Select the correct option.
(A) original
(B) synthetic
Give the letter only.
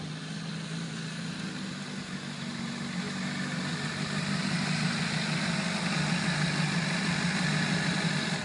A